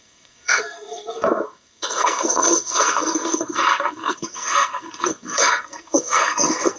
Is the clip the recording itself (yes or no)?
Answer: no